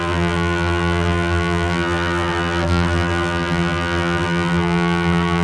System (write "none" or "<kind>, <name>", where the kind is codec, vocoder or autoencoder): vocoder, BigVGAN v2